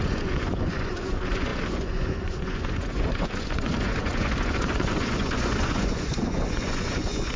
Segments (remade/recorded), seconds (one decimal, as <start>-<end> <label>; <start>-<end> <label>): 0.0-7.4 remade